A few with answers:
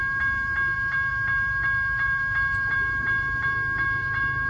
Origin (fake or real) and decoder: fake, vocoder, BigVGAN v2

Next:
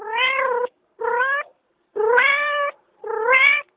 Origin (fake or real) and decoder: fake, vocoder, BigVGAN v2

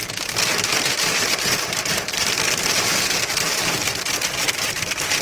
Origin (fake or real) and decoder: fake, vocoder, BigVGAN v2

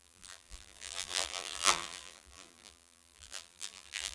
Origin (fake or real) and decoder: fake, vocoder, BigVGAN v2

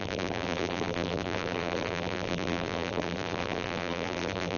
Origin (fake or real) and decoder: fake, vocoder, BigVGAN v2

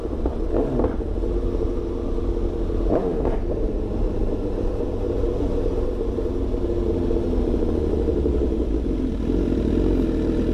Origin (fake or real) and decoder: real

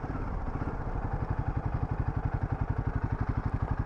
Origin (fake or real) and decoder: real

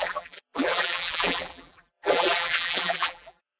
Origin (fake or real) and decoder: fake, vocoder, BigVGAN v2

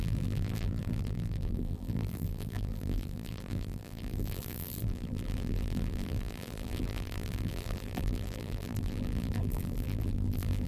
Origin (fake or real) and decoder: fake, vocoder, BigVGAN v2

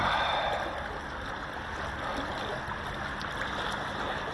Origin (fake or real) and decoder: real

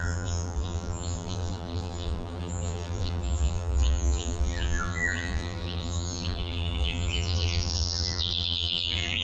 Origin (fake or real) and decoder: fake, vocoder, BigVGAN v2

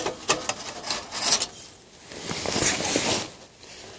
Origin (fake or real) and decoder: real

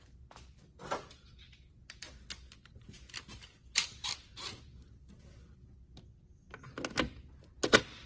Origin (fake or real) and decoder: real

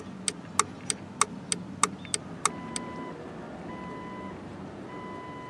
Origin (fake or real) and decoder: real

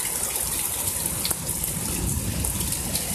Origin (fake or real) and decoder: real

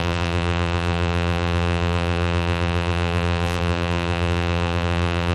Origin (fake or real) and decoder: fake, vocoder, BigVGAN v2